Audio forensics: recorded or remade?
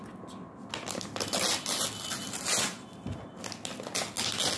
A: recorded